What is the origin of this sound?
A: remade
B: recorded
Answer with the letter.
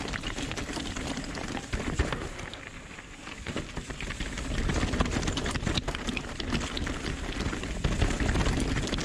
B